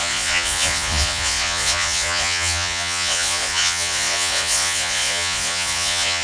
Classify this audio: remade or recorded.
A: remade